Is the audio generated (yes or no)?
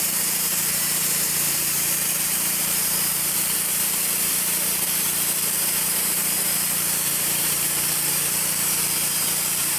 yes